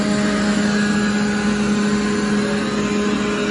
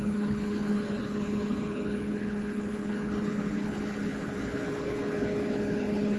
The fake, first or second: second